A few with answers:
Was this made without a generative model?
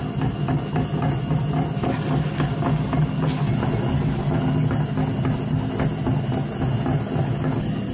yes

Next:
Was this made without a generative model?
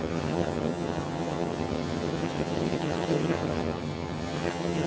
no